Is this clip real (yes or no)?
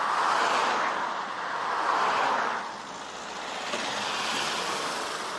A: yes